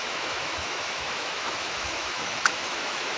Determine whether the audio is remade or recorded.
remade